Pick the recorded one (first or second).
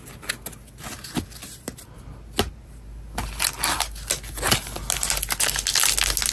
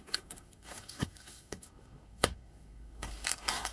first